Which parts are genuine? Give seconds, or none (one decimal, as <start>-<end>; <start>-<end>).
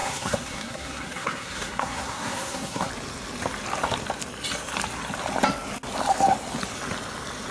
2.9-7.5